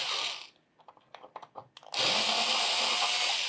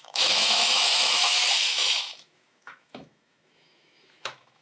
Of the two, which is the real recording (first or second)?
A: first